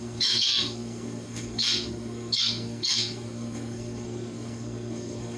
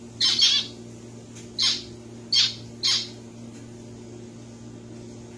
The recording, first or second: second